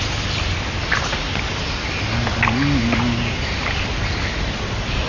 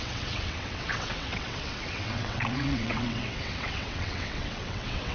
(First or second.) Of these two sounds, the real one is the first